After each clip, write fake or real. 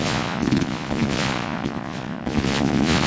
fake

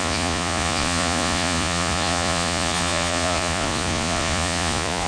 fake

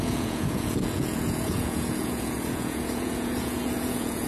fake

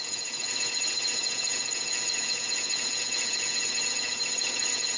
fake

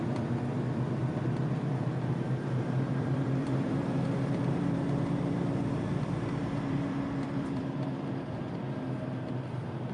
fake